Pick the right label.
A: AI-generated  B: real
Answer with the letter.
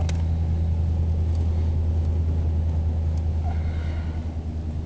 B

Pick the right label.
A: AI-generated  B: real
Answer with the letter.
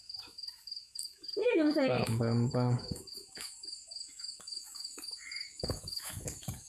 A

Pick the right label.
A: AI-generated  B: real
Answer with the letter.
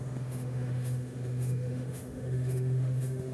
A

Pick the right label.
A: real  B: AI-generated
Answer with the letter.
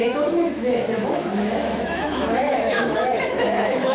B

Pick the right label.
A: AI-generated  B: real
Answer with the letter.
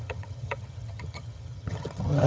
A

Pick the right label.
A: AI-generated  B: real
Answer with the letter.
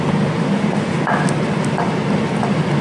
B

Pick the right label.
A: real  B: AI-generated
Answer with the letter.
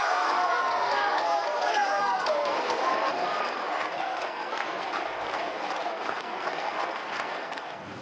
B